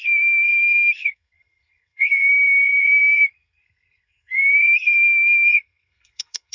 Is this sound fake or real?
fake